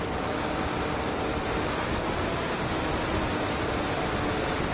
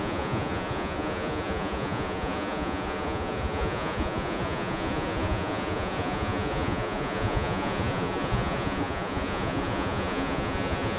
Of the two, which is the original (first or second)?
first